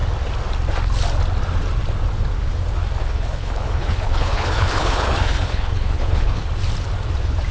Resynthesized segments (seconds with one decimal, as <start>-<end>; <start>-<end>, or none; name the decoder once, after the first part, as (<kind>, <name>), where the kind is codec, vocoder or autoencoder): 3.0-6.5 (codec, HILCodec)